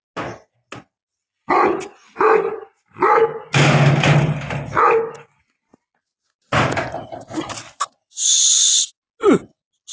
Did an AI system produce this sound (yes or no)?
no